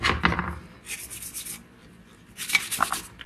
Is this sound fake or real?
real